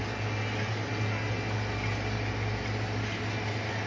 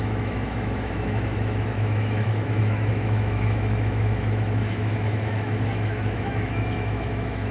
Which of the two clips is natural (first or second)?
first